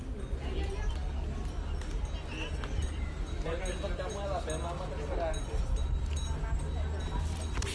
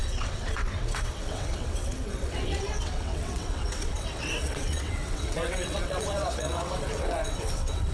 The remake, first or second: second